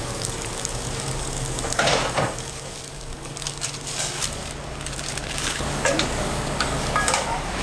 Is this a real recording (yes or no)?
no